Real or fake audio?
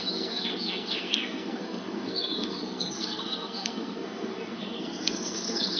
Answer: fake